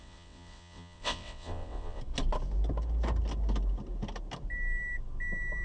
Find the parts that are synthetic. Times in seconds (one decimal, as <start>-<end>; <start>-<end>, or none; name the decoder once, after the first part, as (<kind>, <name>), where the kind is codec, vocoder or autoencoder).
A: 0.0-2.0 (vocoder, WaveNeXt)